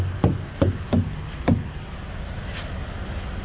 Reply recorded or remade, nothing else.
recorded